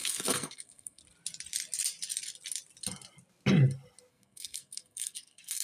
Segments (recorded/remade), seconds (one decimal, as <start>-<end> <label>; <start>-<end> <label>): 0.0-1.0 remade; 1.0-4.1 recorded; 4.1-5.6 remade